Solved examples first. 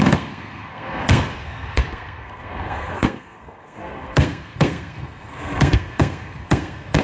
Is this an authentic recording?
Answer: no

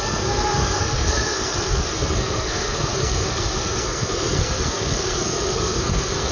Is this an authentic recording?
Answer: no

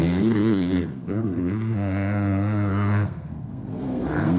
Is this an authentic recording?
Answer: no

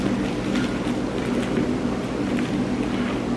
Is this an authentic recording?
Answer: yes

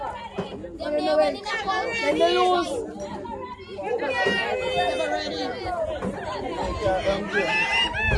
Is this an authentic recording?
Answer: yes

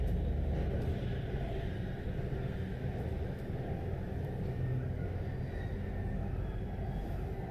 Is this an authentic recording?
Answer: yes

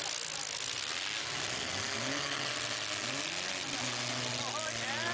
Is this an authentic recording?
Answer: yes